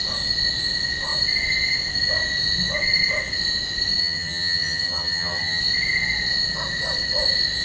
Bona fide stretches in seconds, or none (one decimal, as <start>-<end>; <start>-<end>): 0.0-4.0; 5.6-7.6